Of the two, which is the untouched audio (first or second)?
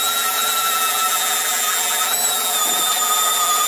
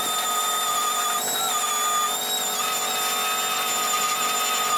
second